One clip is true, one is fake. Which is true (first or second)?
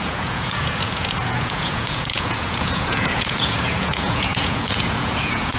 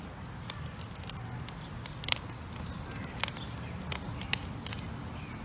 second